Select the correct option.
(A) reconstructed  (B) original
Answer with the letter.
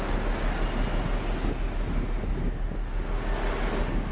B